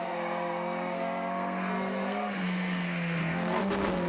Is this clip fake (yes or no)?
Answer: yes